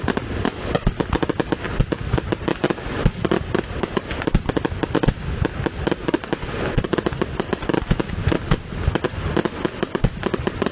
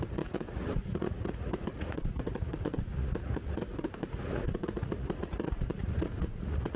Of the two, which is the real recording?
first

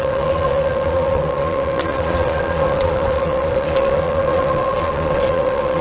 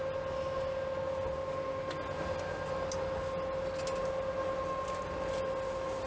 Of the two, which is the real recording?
second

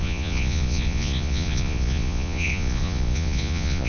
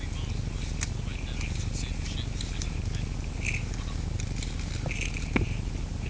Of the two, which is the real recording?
second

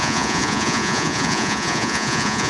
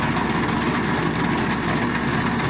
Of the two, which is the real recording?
second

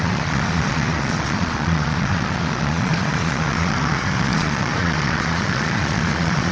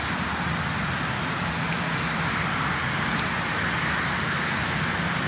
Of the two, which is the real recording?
second